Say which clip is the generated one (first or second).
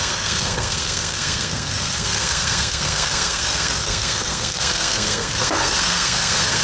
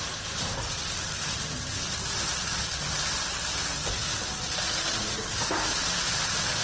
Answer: first